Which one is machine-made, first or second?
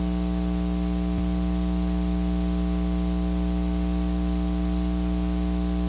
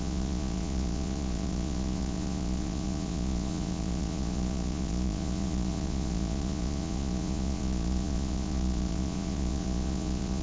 second